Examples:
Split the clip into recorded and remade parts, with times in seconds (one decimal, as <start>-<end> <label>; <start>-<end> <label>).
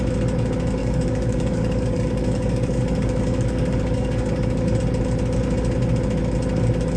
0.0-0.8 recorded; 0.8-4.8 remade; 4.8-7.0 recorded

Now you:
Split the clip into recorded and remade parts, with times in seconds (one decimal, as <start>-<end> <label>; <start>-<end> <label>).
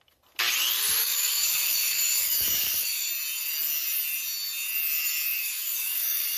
0.0-1.0 recorded; 1.0-3.1 remade; 3.1-5.4 recorded; 5.4-6.4 remade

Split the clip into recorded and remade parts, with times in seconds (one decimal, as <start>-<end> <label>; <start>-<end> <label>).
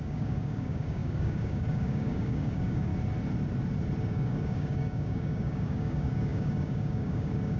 0.0-2.9 remade; 2.9-4.0 recorded; 4.0-7.6 remade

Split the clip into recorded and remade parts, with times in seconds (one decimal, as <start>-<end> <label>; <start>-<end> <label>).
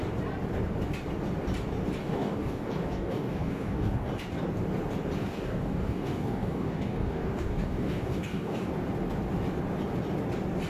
0.0-2.0 recorded; 2.0-4.1 remade; 4.1-5.2 recorded; 5.2-8.7 remade; 8.7-10.7 recorded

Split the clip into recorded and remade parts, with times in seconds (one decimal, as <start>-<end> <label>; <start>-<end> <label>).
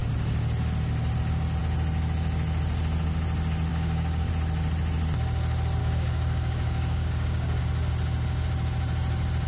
0.0-3.7 recorded; 3.7-4.3 remade; 4.3-5.8 recorded; 5.8-7.6 remade; 7.6-9.5 recorded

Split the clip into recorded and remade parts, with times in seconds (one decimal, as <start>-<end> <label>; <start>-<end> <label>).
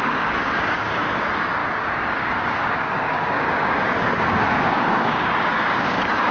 0.0-6.3 remade